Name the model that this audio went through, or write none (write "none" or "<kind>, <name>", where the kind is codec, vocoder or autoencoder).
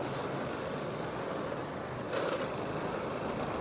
none